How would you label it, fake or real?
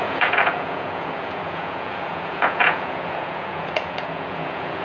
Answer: fake